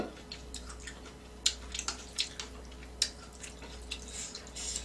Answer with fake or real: real